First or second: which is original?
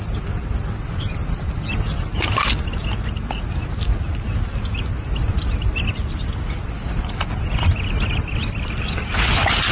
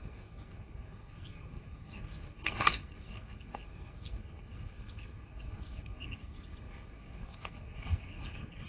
first